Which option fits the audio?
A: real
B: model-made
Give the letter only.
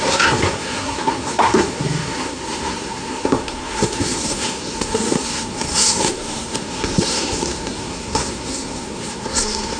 B